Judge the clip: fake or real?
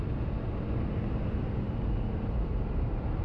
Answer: fake